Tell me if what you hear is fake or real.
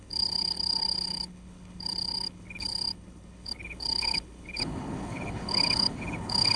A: fake